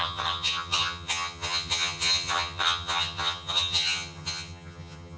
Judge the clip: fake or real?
fake